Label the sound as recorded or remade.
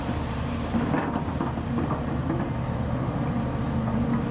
remade